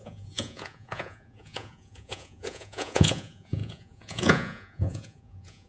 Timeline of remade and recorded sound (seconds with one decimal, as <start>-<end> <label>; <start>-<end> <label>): 0.0-5.7 remade